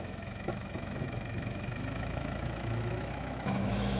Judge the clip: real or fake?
fake